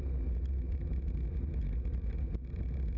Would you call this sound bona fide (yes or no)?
yes